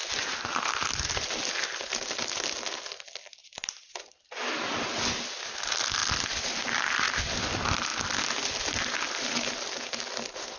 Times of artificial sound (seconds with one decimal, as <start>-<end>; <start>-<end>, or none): 0.0-0.7; 3.4-3.9